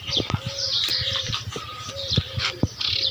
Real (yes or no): no